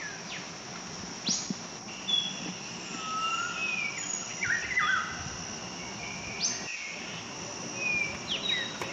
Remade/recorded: recorded